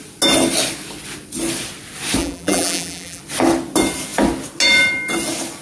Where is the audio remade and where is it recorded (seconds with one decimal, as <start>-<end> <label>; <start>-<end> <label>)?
0.0-2.2 recorded; 2.2-3.2 remade; 3.2-5.6 recorded